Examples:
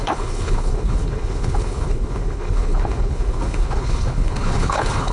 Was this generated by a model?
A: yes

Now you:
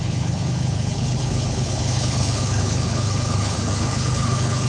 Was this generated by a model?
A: yes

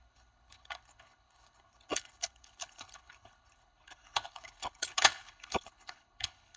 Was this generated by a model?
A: yes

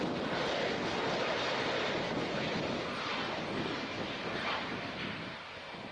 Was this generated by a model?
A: no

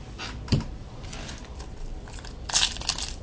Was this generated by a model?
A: no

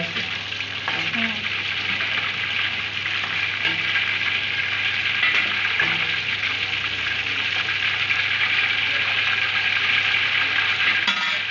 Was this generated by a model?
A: no